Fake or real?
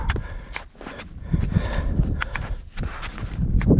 fake